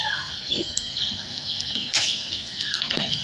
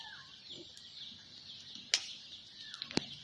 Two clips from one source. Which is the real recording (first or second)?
second